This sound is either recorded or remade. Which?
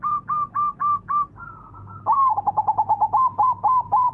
remade